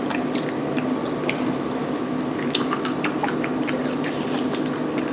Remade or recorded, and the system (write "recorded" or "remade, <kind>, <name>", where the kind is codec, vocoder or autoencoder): recorded